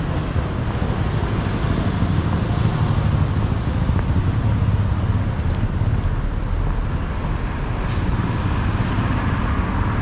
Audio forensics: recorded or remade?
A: recorded